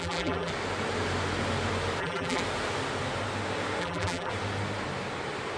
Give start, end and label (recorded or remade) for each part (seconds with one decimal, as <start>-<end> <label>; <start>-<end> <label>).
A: 0.0-0.5 remade; 0.5-2.0 recorded; 2.0-2.4 remade; 2.4-3.8 recorded; 3.8-4.3 remade; 4.3-5.6 recorded